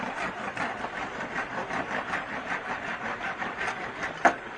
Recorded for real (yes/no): yes